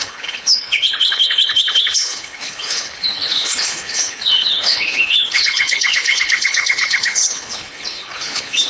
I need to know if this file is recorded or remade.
remade